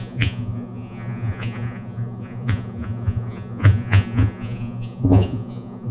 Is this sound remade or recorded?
remade